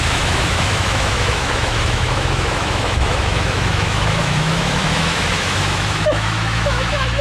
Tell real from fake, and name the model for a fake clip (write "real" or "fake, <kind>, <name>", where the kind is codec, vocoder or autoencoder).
fake, autoencoder, DAC-VAE